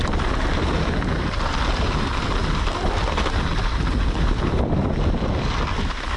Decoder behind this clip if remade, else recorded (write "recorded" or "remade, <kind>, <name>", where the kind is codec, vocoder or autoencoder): recorded